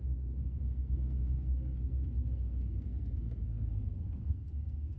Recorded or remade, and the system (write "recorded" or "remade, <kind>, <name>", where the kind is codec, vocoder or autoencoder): remade, codec, SNAC